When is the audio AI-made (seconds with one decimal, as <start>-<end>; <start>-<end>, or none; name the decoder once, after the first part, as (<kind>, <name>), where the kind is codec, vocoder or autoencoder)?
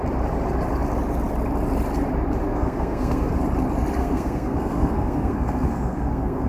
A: 2.4-3.3 (codec, SNAC); 4.0-6.5